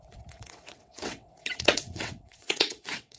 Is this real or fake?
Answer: fake